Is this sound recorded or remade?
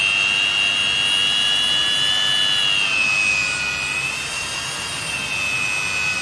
recorded